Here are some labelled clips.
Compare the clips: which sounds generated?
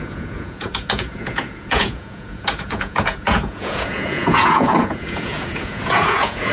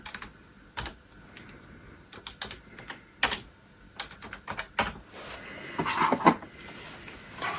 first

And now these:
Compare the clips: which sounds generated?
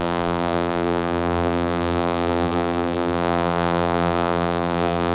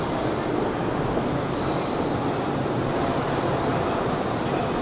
first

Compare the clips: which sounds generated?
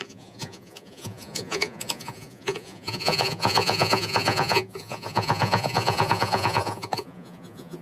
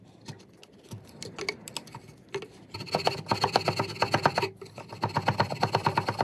first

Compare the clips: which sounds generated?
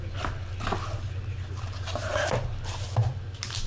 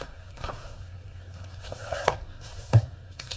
second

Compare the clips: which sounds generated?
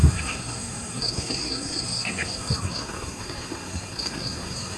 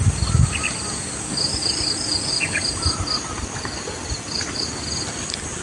first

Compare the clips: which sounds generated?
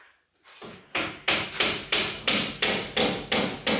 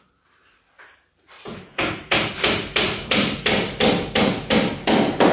second